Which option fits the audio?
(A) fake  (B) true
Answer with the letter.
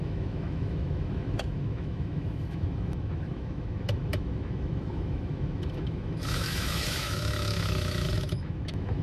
A